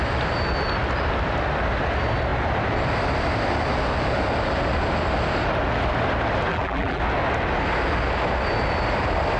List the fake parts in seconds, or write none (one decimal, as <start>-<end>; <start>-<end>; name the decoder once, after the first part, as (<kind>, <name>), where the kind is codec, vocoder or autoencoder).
6.5-7.0 (vocoder, BigVGAN v2)